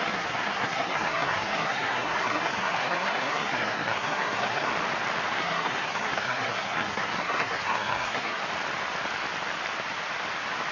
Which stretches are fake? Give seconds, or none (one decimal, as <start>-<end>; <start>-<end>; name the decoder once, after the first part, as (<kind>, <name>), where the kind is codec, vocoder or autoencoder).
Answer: 0.0-4.7 (codec, SNAC); 5.4-8.4